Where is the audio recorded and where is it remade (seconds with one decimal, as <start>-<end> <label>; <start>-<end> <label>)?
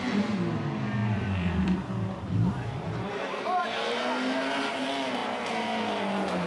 0.0-1.0 recorded; 1.0-4.0 remade; 4.0-6.5 recorded